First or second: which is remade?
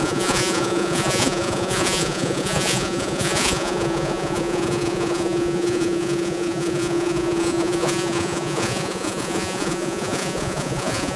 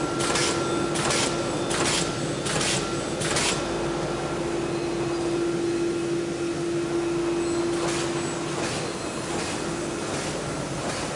first